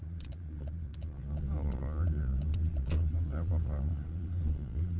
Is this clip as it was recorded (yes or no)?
no